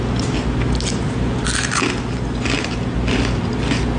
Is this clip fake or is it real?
real